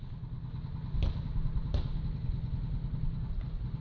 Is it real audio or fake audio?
real